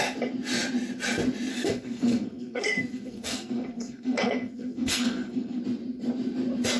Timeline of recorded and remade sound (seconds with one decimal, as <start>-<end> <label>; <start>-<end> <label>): 0.0-1.5 recorded; 1.5-5.6 remade; 5.6-6.8 recorded

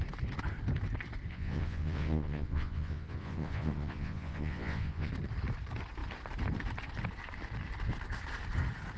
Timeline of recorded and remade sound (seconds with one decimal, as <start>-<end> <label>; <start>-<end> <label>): 0.0-1.3 recorded; 1.3-5.1 remade; 5.1-9.0 recorded

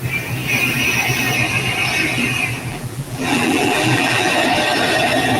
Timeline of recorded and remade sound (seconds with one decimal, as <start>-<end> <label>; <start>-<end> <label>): 0.0-2.7 recorded; 2.7-4.3 remade; 4.3-5.4 recorded

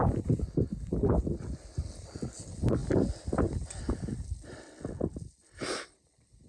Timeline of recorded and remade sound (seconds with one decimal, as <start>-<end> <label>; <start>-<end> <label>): 0.0-6.5 recorded